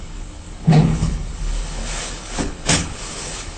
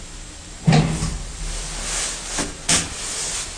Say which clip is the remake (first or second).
first